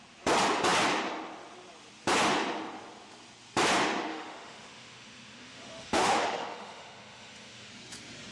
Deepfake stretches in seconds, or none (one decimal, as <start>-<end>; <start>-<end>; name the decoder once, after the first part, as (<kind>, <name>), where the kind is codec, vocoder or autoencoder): 4.1-7.7 (autoencoder, DAC-VAE)